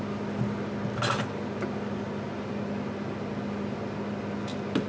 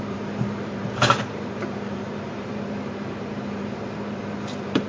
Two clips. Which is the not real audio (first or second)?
second